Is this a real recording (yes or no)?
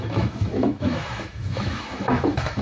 no